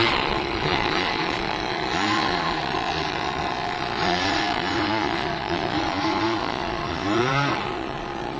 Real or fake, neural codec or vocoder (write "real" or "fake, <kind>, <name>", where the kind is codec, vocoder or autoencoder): fake, vocoder, Vocos